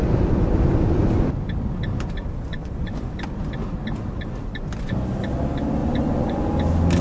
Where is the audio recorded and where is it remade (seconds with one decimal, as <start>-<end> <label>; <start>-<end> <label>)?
0.0-2.5 recorded; 2.5-3.1 remade; 3.1-5.8 recorded; 5.8-6.4 remade; 6.4-7.0 recorded